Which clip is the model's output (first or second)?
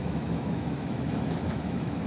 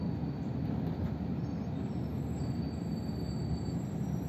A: first